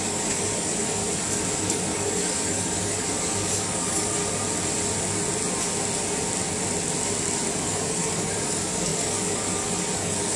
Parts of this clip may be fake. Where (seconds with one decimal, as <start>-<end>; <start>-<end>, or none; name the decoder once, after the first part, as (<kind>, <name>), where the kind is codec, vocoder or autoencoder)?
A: 0.0-1.0 (codec, DAC); 1.6-4.2; 7.5-10.4